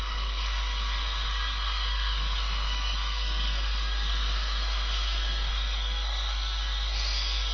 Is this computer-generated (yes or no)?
yes